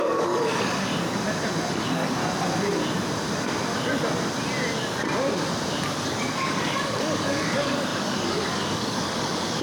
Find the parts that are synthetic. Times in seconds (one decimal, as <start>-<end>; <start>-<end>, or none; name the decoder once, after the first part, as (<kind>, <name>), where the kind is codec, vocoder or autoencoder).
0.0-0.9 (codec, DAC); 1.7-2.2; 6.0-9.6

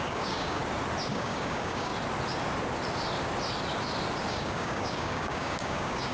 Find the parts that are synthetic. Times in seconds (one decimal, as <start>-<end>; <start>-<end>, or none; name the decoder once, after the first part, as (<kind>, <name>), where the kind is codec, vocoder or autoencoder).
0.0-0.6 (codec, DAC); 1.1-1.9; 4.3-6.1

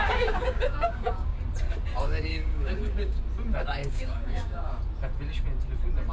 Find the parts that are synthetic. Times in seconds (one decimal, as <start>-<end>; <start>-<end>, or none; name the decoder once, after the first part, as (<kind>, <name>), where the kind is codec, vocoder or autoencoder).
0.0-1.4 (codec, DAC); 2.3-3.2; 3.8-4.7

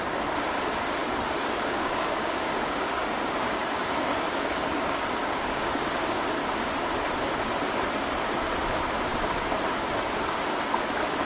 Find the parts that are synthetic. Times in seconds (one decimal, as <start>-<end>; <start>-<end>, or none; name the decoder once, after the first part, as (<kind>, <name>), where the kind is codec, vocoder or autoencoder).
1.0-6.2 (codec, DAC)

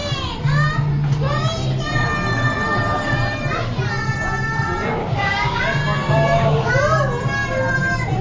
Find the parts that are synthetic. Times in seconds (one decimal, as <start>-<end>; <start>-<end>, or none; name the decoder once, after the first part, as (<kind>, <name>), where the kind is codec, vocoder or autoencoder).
5.0-5.6 (codec, DAC); 6.0-6.7

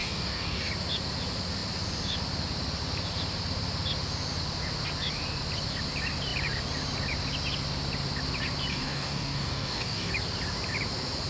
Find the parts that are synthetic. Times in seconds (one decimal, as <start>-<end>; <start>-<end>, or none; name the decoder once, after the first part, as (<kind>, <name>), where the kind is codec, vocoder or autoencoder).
0.0-0.7 (codec, DAC); 8.7-10.1